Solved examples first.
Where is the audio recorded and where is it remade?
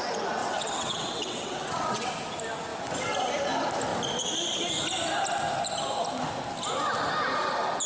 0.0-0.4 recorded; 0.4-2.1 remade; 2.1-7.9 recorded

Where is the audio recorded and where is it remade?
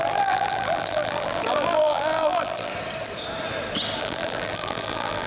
0.0-2.7 remade; 2.7-4.0 recorded; 4.0-5.3 remade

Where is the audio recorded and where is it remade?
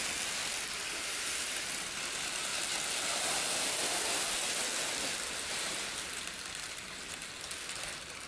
0.0-8.3 recorded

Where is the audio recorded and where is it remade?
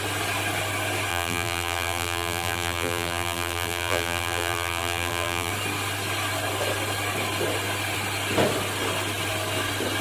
0.0-1.1 recorded; 1.1-5.5 remade; 5.5-10.0 recorded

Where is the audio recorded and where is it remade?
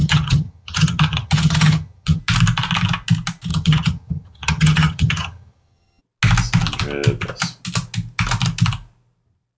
0.0-2.2 remade; 2.2-3.5 recorded; 3.5-6.0 remade; 6.0-9.6 recorded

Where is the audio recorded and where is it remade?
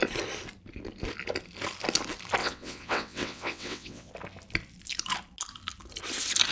0.0-2.4 recorded; 2.4-4.1 remade; 4.1-6.5 recorded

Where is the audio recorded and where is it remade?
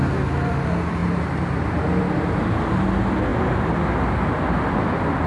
0.0-5.3 recorded